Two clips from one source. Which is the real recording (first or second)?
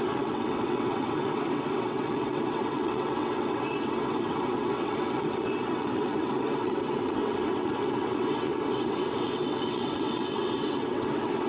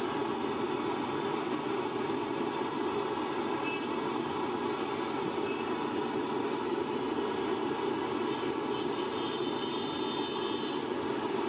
second